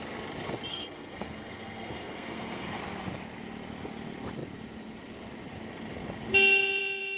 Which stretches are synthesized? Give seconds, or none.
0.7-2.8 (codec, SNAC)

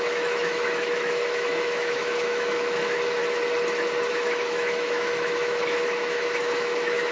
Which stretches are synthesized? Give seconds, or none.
0.0-3.2 (autoencoder, DAC-VAE); 4.1-7.1

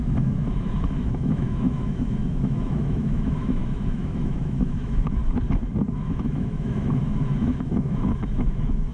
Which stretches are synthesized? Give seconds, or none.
0.0-5.2 (autoencoder, DAC-VAE); 5.9-8.9

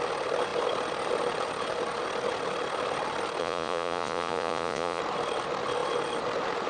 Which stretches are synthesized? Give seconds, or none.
3.4-5.0 (vocoder, Vocos)

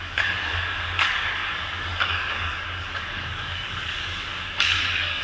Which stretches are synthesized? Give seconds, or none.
0.0-5.2 (codec, DAC)